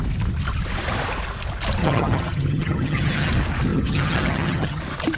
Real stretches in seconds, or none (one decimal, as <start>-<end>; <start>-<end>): 0.0-1.8; 3.3-3.7; 4.8-5.2